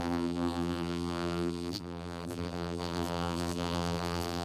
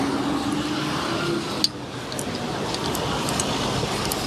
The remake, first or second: first